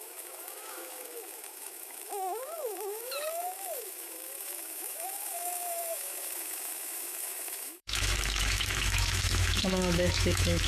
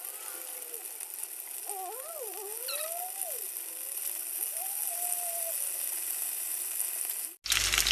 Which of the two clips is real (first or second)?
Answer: second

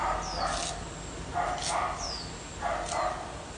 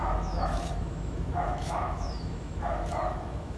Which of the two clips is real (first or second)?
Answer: first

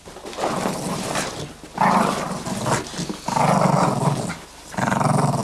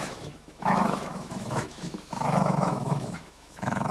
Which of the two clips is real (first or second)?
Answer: first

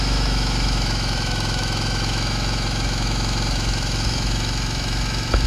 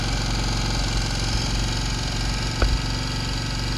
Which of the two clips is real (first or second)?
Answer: second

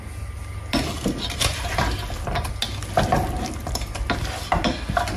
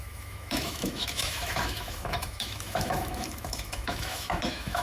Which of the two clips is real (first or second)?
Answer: first